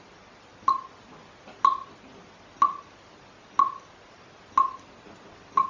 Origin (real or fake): real